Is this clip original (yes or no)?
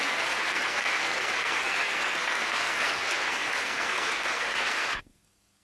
no